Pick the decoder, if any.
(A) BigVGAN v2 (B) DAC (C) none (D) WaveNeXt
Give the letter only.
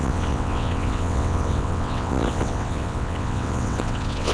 D